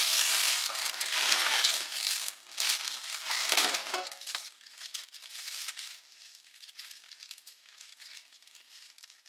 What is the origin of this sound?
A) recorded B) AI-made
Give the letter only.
B